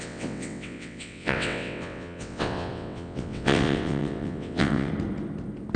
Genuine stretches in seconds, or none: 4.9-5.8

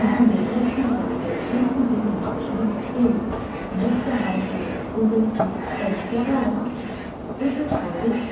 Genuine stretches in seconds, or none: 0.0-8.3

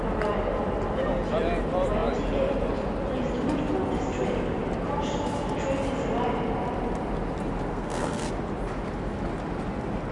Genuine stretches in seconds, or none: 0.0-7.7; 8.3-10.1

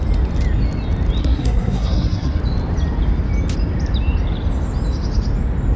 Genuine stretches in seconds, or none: 0.0-1.2; 2.4-5.8